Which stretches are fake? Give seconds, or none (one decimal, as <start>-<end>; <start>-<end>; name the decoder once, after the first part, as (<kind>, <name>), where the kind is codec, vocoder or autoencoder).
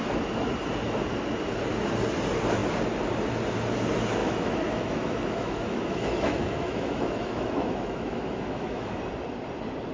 4.2-9.0 (autoencoder, DAC-VAE)